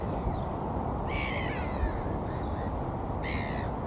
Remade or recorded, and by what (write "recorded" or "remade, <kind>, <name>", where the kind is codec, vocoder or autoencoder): recorded